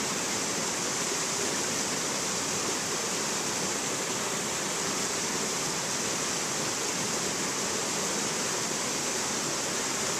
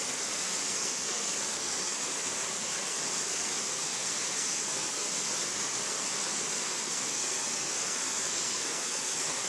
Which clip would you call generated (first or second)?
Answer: second